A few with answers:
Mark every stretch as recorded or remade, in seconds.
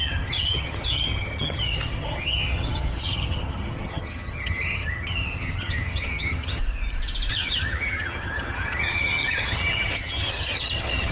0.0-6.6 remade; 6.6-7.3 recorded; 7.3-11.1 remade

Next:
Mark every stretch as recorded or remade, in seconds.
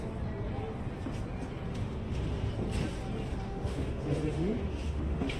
0.0-1.7 recorded; 1.7-2.5 remade; 2.5-3.4 recorded; 3.4-5.4 remade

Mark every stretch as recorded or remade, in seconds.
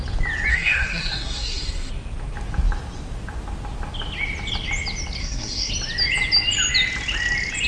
0.0-0.5 recorded; 0.5-1.9 remade; 1.9-5.2 recorded; 5.2-5.7 remade; 5.7-7.7 recorded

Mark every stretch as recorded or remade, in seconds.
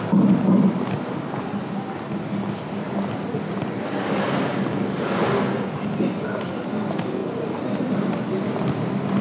0.0-7.2 recorded; 7.2-8.2 remade; 8.2-9.2 recorded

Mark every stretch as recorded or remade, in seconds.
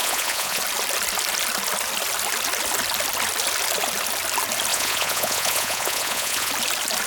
0.0-0.6 remade; 0.6-4.7 recorded; 4.7-6.5 remade; 6.5-7.1 recorded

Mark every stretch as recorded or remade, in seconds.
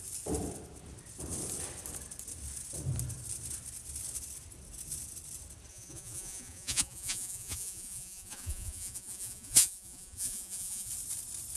0.0-5.7 recorded; 5.7-10.9 remade; 10.9-11.6 recorded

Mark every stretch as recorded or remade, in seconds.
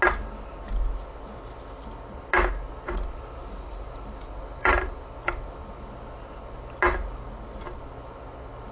0.0-3.4 recorded; 3.4-5.4 remade; 5.4-8.7 recorded